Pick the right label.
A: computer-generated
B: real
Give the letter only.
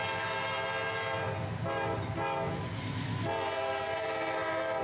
B